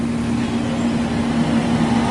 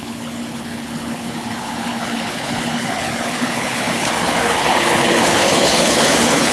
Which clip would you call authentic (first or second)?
first